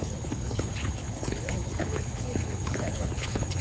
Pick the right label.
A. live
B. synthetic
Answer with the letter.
B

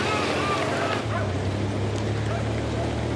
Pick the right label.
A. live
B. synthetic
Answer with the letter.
A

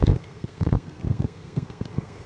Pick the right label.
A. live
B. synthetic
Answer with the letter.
B